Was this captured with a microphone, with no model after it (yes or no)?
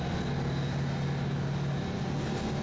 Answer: yes